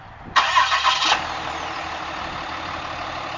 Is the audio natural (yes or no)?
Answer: yes